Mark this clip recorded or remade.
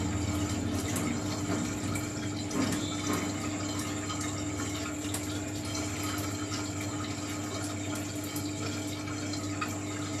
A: recorded